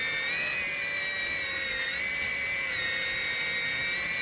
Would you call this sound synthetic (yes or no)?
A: no